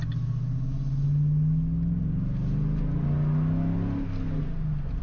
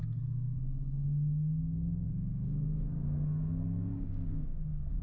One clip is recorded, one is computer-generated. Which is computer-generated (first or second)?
second